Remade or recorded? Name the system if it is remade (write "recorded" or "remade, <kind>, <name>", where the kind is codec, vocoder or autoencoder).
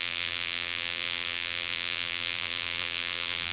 remade, vocoder, BigVGAN v2